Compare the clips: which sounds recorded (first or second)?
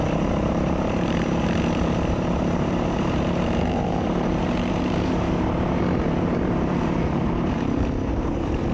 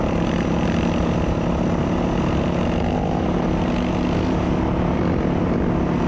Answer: second